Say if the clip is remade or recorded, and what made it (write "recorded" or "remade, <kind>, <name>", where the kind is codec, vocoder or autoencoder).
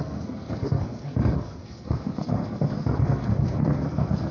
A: remade, codec, SNAC